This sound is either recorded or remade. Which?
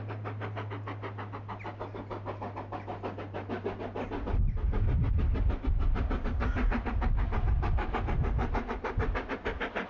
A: recorded